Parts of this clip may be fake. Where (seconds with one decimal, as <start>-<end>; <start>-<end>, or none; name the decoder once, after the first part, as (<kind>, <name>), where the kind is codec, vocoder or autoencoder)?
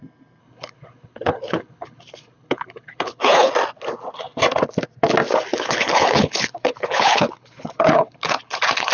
0.4-3.5 (codec, HILCodec); 5.5-8.9